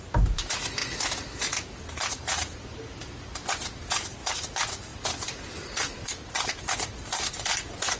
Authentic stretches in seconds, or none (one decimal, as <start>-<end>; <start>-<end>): none